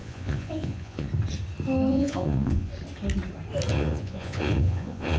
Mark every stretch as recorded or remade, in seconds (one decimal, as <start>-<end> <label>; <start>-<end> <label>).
0.0-1.1 remade; 1.1-1.9 recorded; 1.9-2.7 remade; 2.7-3.7 recorded; 3.7-5.2 remade